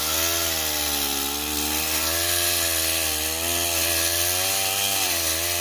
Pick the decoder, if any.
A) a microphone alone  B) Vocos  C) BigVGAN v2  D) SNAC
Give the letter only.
A